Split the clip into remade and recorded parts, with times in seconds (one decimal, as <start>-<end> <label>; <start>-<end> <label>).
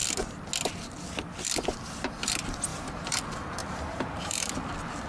0.0-2.7 recorded; 2.7-3.2 remade; 3.2-3.6 recorded; 3.6-4.5 remade; 4.5-5.1 recorded